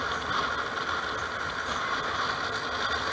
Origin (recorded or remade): recorded